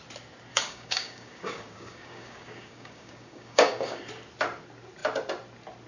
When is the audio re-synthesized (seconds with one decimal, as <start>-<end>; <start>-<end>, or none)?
0.5-4.0